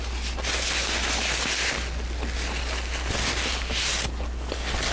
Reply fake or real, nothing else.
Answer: real